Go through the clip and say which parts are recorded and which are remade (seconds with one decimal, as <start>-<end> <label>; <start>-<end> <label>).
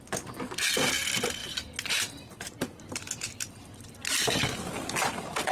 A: 0.0-1.4 recorded; 1.4-4.7 remade; 4.7-5.5 recorded